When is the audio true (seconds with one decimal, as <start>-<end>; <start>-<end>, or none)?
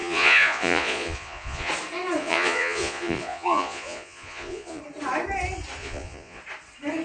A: 1.7-2.2; 4.8-5.8; 6.4-7.0